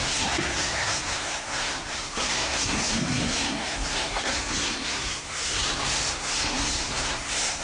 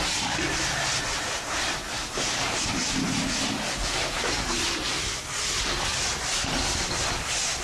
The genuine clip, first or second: second